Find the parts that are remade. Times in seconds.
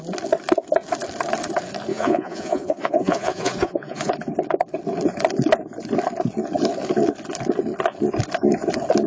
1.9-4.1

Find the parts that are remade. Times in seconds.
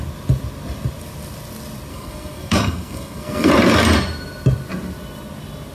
1.9-3.5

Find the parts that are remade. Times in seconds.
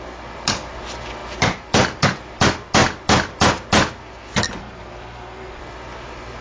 4.6-5.6